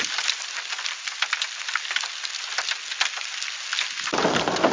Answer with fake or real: real